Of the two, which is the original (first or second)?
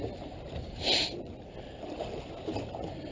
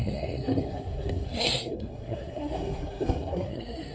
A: first